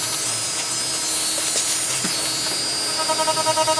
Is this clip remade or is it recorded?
recorded